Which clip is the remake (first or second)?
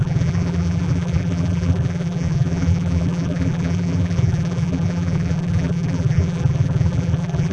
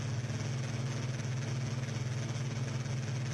first